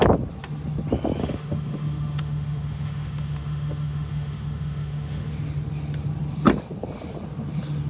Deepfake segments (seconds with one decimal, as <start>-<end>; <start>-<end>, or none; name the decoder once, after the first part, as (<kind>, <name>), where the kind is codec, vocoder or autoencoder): 1.2-5.3 (autoencoder, DAC-VAE)